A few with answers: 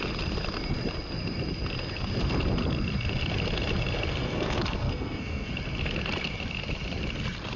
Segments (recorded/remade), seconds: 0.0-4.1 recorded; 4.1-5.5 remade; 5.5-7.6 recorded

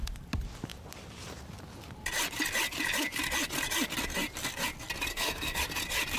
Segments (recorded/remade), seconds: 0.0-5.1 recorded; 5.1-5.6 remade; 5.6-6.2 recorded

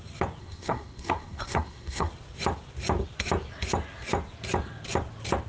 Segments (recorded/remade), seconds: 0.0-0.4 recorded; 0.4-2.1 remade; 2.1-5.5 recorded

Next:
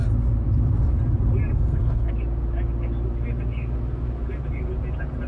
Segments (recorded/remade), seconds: 0.0-1.5 recorded; 1.5-2.1 remade; 2.1-5.3 recorded